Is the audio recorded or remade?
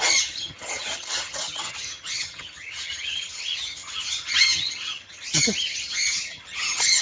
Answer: remade